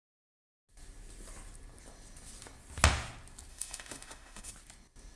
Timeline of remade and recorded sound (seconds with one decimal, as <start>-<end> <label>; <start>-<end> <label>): 0.0-3.5 recorded; 3.5-4.5 remade; 4.5-5.2 recorded